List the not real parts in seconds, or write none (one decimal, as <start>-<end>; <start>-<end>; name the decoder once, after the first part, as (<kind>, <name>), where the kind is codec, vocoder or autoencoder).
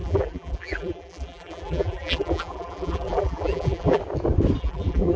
0.0-4.0 (vocoder, BigVGAN v2); 4.6-5.2